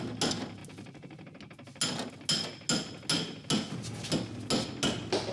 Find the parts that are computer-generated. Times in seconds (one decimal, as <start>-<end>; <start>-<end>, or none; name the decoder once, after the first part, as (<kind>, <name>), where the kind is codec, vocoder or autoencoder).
none